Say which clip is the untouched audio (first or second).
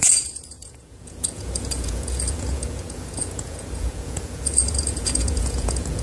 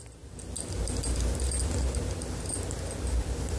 second